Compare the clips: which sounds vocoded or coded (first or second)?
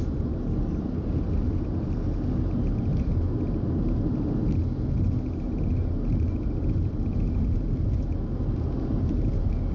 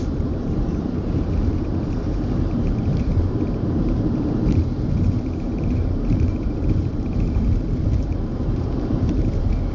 second